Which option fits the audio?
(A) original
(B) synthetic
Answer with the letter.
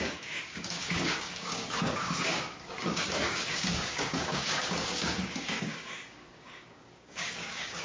B